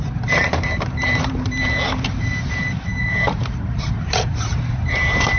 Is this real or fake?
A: fake